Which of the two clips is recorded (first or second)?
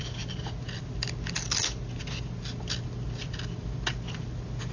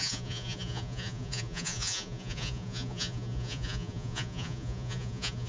first